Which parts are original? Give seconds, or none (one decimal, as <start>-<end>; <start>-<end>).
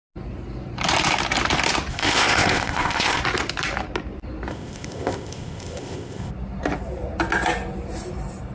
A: 0.0-1.9; 3.2-4.5; 6.3-8.5